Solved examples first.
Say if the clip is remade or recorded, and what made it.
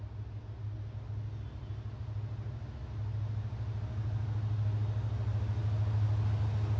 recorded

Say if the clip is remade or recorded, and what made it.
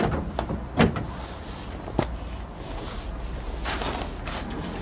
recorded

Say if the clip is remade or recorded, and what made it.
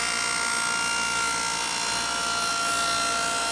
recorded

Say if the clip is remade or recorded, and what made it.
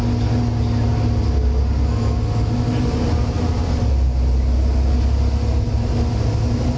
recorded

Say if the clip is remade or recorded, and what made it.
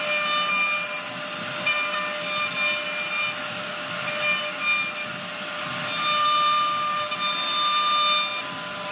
recorded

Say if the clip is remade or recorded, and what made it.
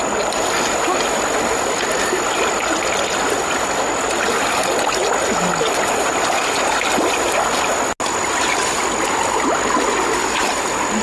recorded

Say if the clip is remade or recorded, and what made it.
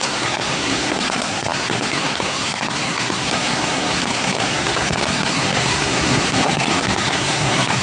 remade, codec, SNAC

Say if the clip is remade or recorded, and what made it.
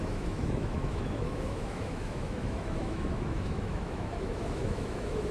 remade, autoencoder, DAC-VAE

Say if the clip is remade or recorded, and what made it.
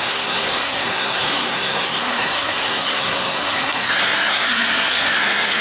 remade, codec, SNAC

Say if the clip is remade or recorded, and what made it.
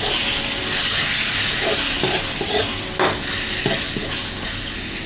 recorded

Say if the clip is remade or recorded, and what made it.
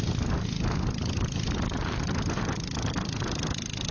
recorded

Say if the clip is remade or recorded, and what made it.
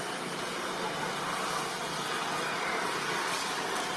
recorded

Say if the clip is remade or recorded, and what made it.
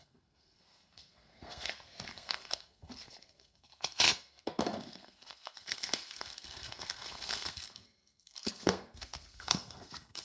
remade, codec, SNAC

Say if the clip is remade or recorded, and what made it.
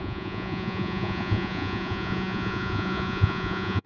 remade, vocoder, Vocos